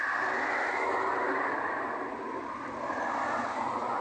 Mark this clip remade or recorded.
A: recorded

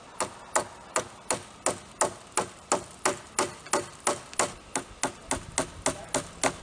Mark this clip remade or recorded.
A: recorded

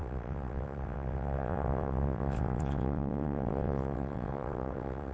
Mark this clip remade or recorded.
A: remade